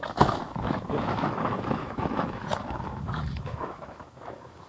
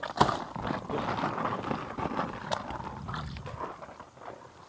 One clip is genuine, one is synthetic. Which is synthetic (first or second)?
first